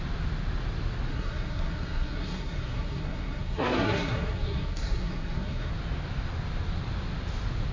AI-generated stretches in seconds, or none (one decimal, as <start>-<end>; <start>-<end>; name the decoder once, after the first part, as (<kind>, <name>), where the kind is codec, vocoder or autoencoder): 1.1-5.7 (codec, SNAC)